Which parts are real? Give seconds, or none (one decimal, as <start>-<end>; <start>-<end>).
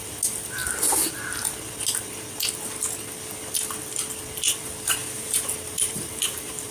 0.0-5.0